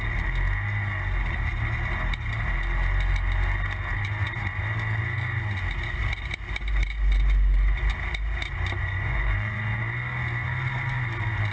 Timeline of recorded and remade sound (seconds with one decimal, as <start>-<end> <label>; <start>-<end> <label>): 0.0-8.8 recorded; 8.8-9.8 remade; 9.8-11.5 recorded